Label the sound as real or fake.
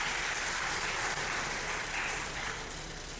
fake